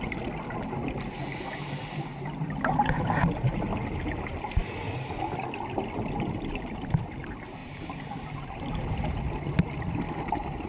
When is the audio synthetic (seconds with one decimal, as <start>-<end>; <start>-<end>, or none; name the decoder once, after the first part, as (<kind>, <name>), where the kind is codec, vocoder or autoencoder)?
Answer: 1.3-3.4 (vocoder, BigVGAN v2); 7.6-9.2